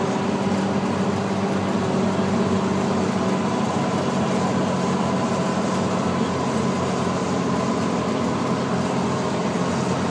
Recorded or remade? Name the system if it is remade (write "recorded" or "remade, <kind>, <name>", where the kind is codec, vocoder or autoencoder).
recorded